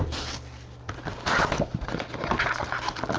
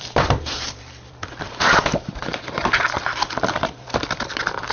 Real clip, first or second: first